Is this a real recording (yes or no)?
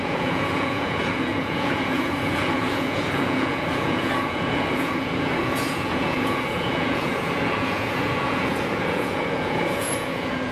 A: no